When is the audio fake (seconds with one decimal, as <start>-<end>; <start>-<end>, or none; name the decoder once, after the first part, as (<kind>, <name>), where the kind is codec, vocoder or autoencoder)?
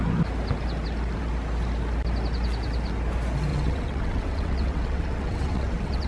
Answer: 3.5-6.1 (vocoder, WaveNeXt)